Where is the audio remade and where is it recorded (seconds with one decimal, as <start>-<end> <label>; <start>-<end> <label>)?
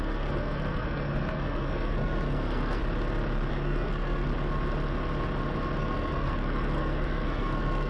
0.0-2.8 remade; 2.8-3.5 recorded; 3.5-4.3 remade; 4.3-5.8 recorded; 5.8-7.9 remade